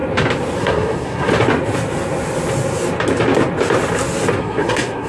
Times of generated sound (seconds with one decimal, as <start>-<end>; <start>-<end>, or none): 0.6-1.3; 4.4-5.1